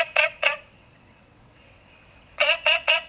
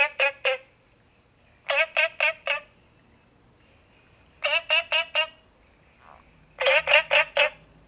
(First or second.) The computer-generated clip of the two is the first